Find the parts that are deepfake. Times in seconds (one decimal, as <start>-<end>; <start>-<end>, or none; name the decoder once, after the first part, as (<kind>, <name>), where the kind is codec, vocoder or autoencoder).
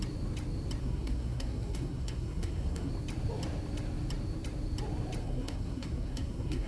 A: 0.8-2.9 (codec, SNAC); 5.2-6.7